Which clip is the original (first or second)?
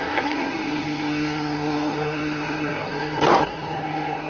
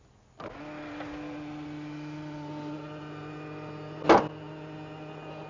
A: second